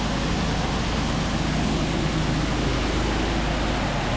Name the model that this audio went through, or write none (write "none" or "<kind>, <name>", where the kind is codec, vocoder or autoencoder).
none